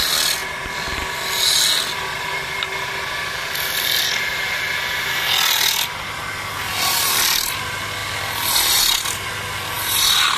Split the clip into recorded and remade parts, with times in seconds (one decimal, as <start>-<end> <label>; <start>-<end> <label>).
0.0-10.4 recorded